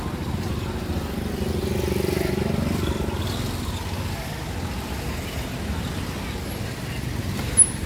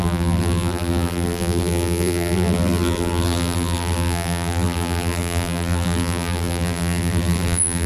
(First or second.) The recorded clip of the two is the first